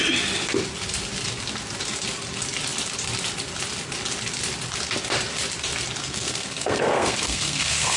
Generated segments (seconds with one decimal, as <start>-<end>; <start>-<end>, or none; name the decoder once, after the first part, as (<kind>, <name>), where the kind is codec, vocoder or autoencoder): 6.0-8.0 (codec, SNAC)